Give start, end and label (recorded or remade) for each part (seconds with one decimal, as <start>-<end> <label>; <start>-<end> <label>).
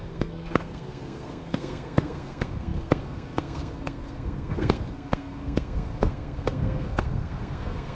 0.0-7.9 remade